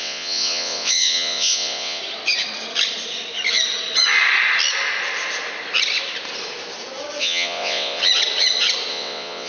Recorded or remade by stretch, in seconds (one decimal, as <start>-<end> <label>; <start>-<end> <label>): 0.0-2.0 remade; 2.0-7.2 recorded; 7.2-8.0 remade; 8.0-8.9 recorded; 8.9-9.5 remade